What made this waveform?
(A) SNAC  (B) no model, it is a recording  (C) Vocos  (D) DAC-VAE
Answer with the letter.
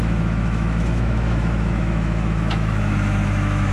D